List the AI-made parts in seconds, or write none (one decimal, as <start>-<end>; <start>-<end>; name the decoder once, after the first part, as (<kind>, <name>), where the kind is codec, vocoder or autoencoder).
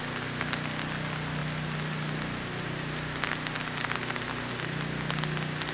none